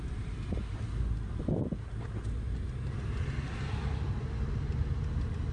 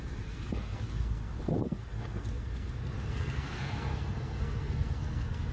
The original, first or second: first